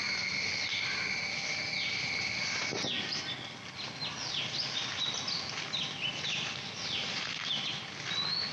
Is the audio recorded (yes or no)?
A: yes